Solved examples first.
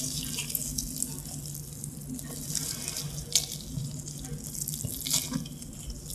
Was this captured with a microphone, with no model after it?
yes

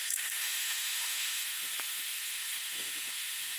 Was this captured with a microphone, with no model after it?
no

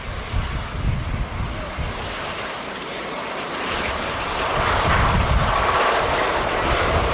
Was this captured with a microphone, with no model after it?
yes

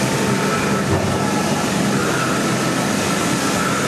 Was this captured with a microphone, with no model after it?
yes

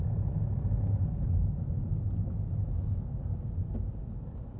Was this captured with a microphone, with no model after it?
yes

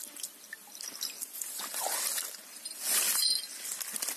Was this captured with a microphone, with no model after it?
yes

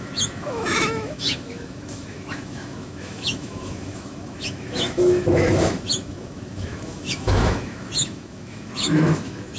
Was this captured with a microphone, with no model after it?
no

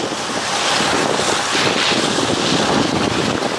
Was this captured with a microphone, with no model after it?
yes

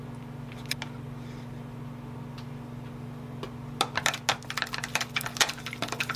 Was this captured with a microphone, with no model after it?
yes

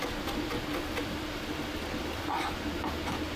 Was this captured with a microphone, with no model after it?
yes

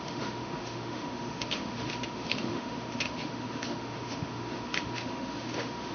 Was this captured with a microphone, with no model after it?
no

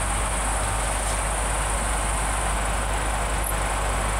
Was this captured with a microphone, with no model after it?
yes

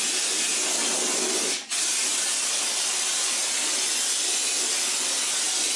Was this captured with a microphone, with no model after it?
yes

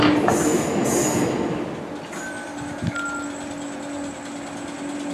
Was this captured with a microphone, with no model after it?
yes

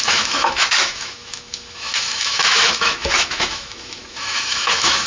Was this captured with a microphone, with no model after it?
no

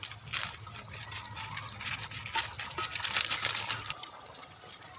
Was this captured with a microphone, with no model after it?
yes